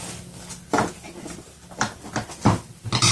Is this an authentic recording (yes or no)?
no